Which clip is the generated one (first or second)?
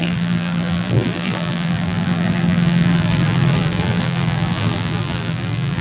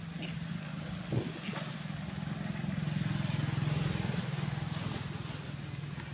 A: first